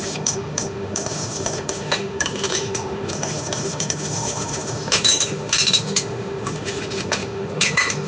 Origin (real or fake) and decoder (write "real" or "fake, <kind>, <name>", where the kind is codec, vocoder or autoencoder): fake, autoencoder, DAC-VAE